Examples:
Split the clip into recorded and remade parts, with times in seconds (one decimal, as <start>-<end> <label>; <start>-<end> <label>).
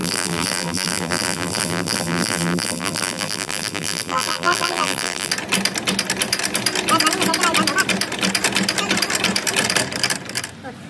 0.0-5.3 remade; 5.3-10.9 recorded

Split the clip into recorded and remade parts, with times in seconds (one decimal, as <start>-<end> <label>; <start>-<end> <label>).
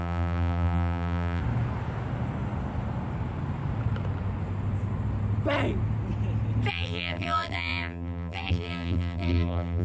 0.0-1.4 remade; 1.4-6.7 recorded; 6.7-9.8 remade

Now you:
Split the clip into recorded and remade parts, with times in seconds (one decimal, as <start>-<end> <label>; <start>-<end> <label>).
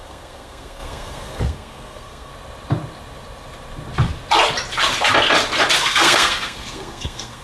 0.0-2.3 remade; 2.3-5.8 recorded; 5.8-7.4 remade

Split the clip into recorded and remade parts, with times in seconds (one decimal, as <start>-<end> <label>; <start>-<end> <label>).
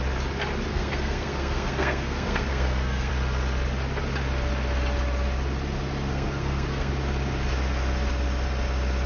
0.0-0.7 recorded; 0.7-3.1 remade; 3.1-6.1 recorded; 6.1-6.9 remade; 6.9-9.1 recorded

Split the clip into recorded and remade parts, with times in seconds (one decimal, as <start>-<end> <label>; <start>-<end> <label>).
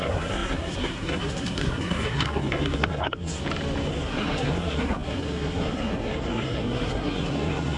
0.0-3.4 remade; 3.4-3.9 recorded; 3.9-7.8 remade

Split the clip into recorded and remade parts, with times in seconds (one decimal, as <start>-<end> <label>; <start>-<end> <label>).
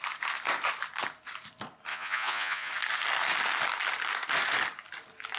0.0-1.9 recorded; 1.9-2.7 remade; 2.7-5.4 recorded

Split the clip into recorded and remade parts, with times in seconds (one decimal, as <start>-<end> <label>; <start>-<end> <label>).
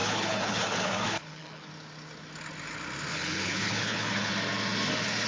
0.0-1.7 remade; 1.7-3.1 recorded; 3.1-4.3 remade; 4.3-5.3 recorded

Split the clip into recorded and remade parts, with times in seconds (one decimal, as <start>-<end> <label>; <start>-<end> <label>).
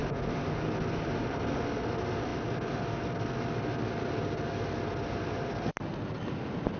0.0-6.8 recorded